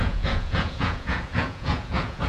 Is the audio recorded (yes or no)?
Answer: no